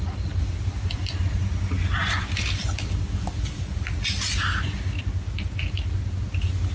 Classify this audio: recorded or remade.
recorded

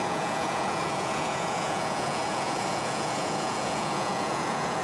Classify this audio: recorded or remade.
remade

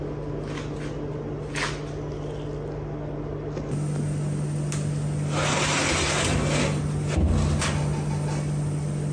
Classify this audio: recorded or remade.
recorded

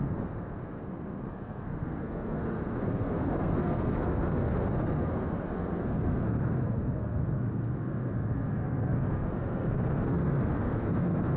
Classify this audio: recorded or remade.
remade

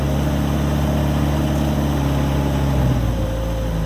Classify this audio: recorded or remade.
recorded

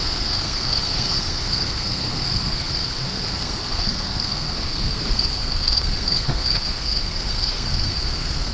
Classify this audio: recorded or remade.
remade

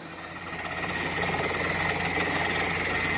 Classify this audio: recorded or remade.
recorded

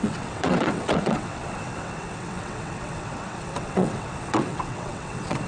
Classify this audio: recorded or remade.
remade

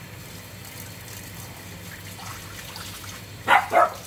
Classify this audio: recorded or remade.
recorded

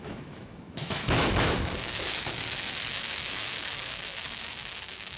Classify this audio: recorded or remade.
remade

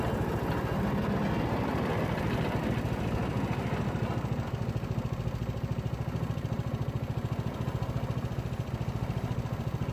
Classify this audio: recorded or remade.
recorded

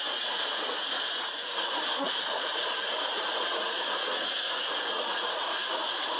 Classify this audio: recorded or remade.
remade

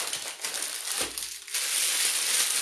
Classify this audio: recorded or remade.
recorded